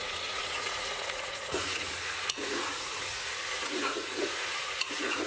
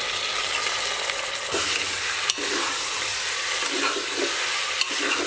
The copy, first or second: first